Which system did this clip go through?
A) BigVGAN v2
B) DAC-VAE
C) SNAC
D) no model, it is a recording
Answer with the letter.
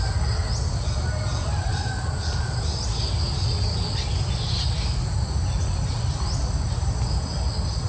D